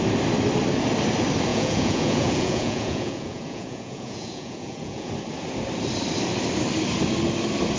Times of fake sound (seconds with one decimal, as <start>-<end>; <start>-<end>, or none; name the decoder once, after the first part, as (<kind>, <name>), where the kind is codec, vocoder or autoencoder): 1.5-5.1 (vocoder, Vocos)